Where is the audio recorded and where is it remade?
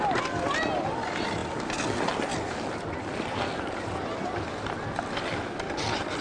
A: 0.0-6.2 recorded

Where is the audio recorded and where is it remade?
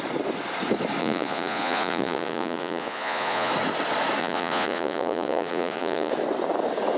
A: 0.0-1.0 recorded; 1.0-3.5 remade; 3.5-4.2 recorded; 4.2-6.1 remade; 6.1-7.0 recorded